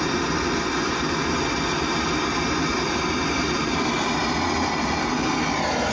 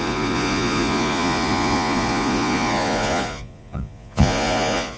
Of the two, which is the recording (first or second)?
first